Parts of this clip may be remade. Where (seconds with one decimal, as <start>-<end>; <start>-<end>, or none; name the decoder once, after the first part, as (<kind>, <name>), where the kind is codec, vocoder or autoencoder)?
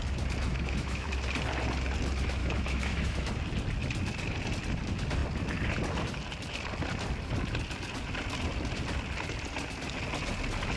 0.5-1.1 (autoencoder, DAC-VAE); 2.4-3.3